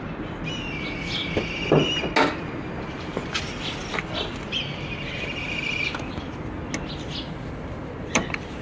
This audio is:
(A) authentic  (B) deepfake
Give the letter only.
A